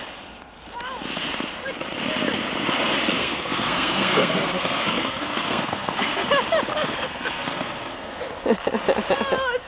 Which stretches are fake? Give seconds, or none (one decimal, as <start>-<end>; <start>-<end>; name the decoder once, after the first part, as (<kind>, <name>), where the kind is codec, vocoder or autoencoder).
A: 3.2-6.3 (codec, SNAC); 6.7-8.2